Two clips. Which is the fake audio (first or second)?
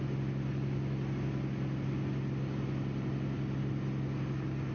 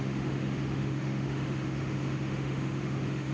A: second